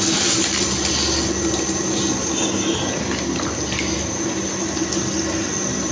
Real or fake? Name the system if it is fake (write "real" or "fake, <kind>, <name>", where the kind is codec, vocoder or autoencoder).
real